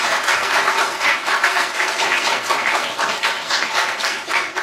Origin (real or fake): fake